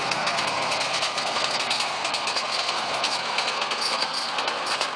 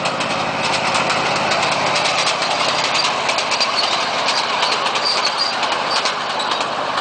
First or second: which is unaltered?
second